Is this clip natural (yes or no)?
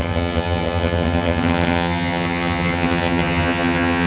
no